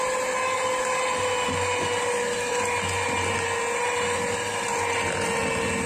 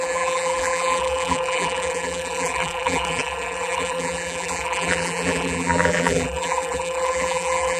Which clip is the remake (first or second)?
second